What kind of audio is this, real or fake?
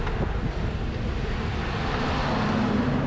real